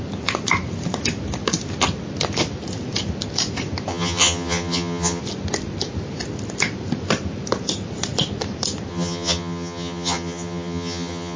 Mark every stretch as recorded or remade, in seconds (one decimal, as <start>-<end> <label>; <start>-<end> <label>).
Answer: 0.0-3.9 recorded; 3.9-5.2 remade; 5.2-8.9 recorded; 8.9-11.4 remade